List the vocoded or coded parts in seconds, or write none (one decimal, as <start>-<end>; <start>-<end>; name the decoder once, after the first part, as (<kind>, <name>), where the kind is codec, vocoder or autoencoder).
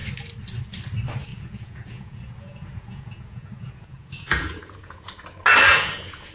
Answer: 1.3-5.1 (vocoder, Vocos); 5.7-6.3